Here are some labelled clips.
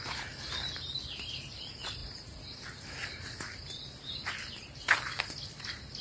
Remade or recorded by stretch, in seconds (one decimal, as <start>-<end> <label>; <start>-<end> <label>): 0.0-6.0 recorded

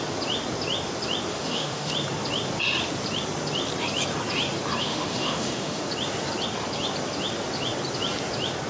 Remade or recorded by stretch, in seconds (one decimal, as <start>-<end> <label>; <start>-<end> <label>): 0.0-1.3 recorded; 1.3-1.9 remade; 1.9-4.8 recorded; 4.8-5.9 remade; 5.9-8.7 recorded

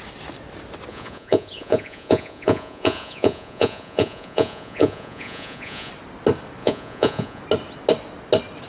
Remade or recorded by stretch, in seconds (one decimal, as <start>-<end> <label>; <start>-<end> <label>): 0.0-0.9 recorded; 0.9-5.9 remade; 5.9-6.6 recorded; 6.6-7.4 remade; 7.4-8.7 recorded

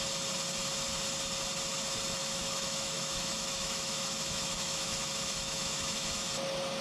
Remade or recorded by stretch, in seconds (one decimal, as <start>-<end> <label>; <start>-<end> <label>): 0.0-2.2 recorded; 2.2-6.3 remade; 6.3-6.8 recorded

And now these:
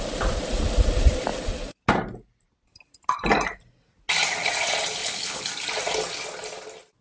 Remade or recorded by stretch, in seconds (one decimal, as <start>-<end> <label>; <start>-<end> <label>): 0.0-5.0 recorded; 5.0-5.5 remade; 5.5-7.0 recorded

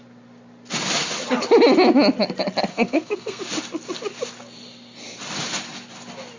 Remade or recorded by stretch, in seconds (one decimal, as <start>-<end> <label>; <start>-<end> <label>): 0.0-2.7 recorded; 2.7-3.4 remade; 3.4-6.4 recorded